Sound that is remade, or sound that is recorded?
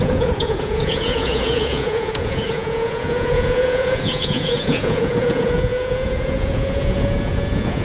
remade